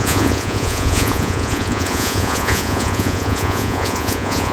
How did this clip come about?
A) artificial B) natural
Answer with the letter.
A